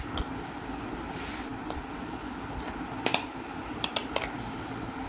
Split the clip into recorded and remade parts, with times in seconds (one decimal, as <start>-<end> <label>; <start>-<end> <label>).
0.0-1.6 recorded; 1.6-4.1 remade; 4.1-5.1 recorded